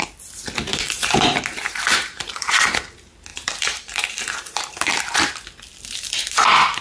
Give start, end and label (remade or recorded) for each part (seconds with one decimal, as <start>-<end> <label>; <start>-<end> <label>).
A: 0.0-0.7 recorded; 0.7-1.2 remade; 1.2-1.6 recorded; 1.6-2.5 remade; 2.5-3.3 recorded; 3.3-5.3 remade; 5.3-6.8 recorded